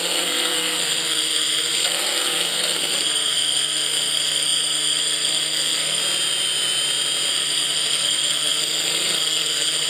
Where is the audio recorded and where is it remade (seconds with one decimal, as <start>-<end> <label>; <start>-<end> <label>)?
0.0-6.0 remade; 6.0-7.3 recorded; 7.3-9.9 remade